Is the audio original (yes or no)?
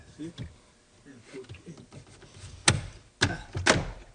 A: yes